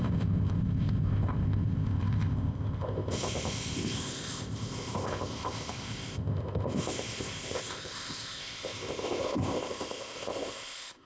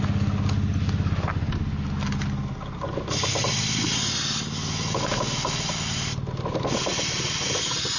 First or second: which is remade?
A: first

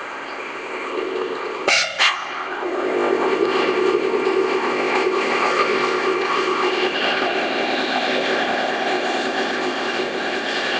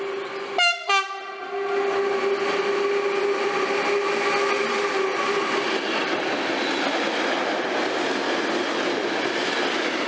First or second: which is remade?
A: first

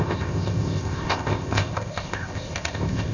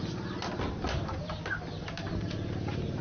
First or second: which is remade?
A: first